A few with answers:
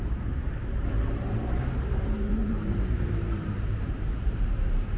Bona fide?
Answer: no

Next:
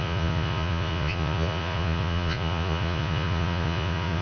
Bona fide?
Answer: no